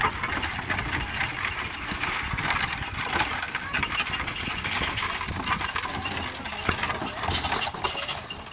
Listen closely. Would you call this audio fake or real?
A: real